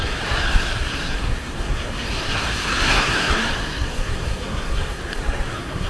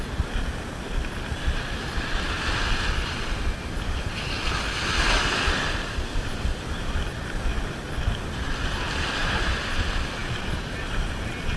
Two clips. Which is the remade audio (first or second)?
first